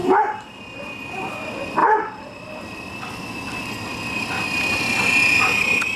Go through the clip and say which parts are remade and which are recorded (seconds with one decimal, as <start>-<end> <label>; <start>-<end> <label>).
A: 0.0-1.3 remade; 1.3-1.8 recorded; 1.8-5.4 remade; 5.4-6.0 recorded